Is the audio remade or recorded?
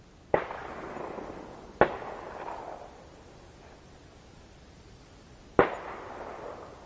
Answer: recorded